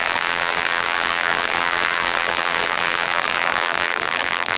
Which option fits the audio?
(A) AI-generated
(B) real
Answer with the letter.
A